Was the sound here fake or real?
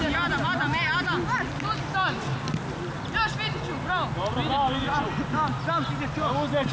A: real